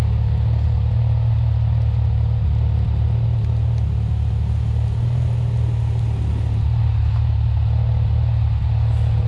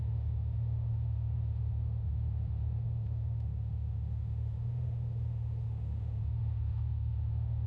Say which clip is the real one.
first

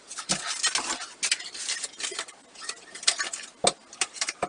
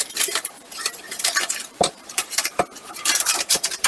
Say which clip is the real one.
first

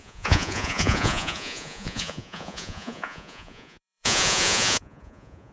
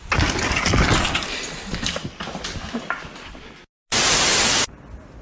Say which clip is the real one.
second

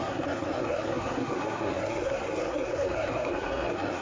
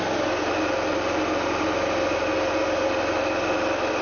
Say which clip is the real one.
second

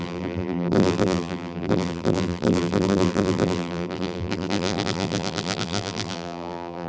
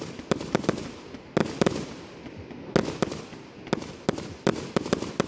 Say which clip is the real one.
second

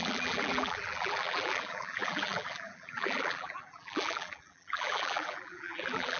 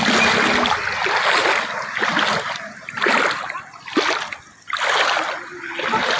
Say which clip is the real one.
second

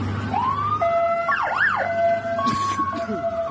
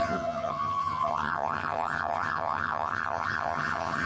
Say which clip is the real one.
first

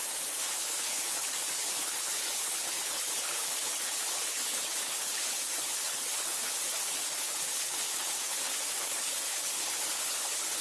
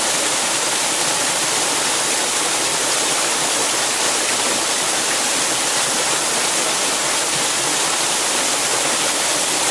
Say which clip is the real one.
second